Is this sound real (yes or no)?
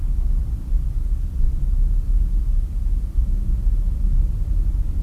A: yes